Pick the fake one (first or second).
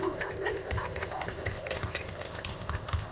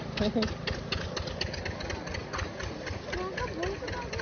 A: first